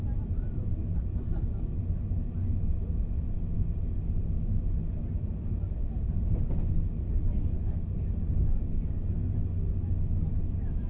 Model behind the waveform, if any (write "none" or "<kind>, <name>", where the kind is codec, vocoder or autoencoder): none